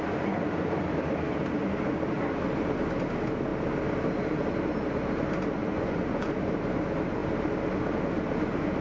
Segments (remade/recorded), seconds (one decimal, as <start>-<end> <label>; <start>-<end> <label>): 0.0-5.6 recorded; 5.6-6.3 remade; 6.3-8.8 recorded